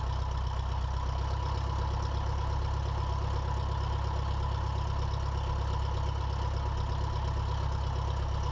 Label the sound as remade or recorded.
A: recorded